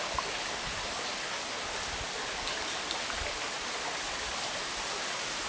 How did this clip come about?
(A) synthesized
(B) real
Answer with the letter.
B